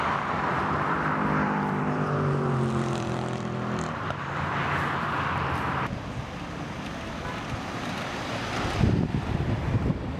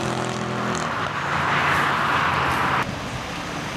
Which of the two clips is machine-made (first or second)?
first